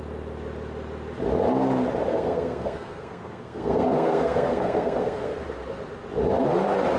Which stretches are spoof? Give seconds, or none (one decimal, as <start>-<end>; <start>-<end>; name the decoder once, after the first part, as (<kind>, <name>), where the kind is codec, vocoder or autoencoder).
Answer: 2.1-5.4 (codec, SNAC)